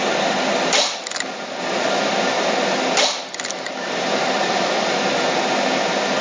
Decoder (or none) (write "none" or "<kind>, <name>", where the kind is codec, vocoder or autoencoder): none